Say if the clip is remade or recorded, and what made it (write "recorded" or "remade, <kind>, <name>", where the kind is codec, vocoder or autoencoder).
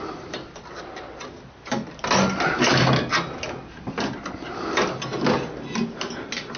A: recorded